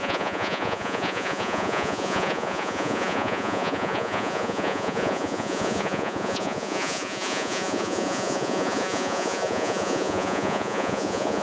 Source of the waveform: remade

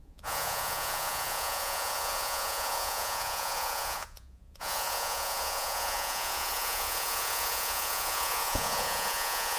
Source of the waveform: remade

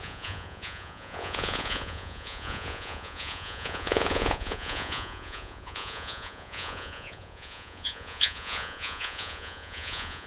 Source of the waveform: remade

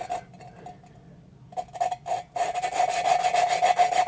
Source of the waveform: recorded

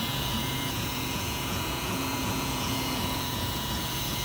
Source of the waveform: remade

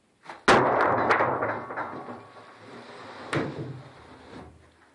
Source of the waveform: recorded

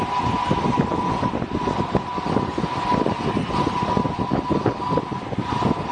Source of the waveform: recorded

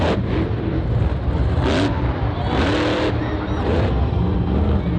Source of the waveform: recorded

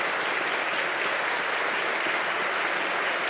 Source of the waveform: recorded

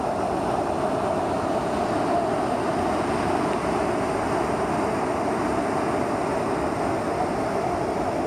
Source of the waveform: recorded